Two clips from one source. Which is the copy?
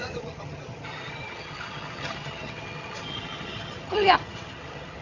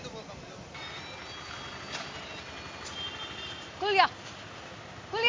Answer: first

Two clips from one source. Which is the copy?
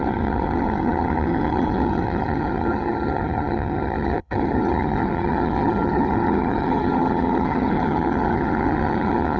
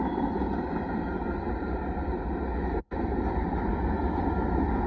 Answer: first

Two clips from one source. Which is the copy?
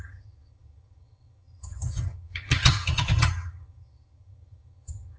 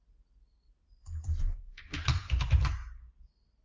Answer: first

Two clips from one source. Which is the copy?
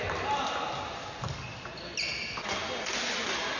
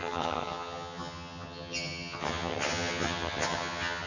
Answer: second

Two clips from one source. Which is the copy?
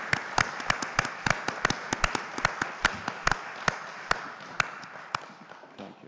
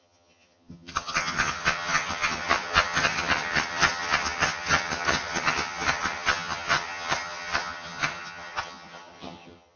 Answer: second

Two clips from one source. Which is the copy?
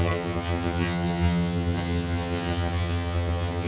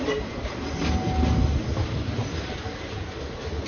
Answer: first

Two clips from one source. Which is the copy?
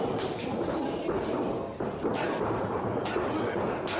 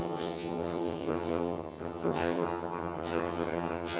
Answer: second